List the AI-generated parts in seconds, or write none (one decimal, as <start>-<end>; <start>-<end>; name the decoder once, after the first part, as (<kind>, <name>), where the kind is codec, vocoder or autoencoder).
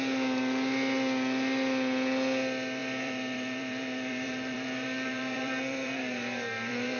2.8-7.0 (vocoder, BigVGAN v2)